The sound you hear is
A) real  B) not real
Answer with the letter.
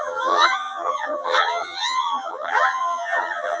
B